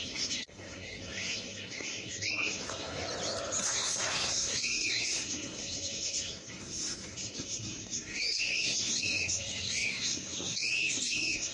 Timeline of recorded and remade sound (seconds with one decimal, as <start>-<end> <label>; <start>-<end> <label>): 0.0-3.0 remade; 3.0-3.6 recorded; 3.6-11.5 remade